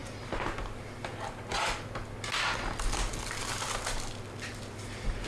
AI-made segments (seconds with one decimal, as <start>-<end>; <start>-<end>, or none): none